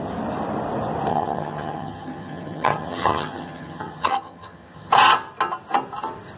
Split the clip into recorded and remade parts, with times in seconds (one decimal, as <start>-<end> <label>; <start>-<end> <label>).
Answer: 0.0-1.1 recorded; 1.1-4.9 remade; 4.9-6.4 recorded